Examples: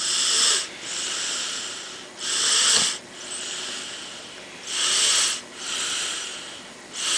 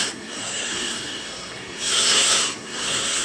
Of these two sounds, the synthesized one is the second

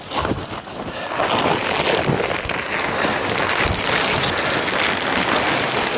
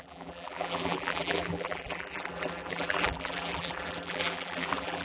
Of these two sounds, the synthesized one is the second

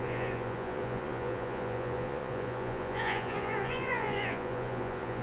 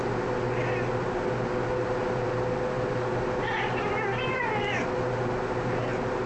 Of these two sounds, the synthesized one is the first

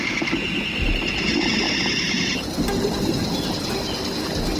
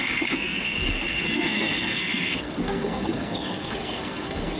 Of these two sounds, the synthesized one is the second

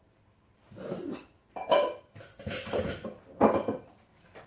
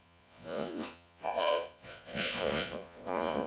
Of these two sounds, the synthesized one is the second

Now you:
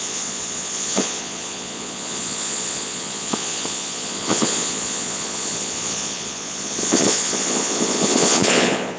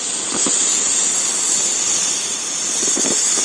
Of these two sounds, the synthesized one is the first